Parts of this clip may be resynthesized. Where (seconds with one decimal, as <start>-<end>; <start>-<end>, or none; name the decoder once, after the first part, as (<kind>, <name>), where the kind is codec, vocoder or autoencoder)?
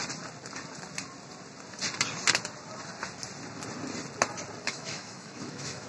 4.6-5.9 (autoencoder, DAC-VAE)